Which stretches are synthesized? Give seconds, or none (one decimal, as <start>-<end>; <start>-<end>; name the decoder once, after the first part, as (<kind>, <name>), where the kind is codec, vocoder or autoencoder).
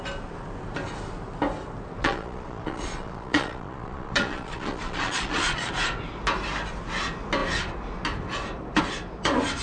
2.0-5.7 (vocoder, Vocos)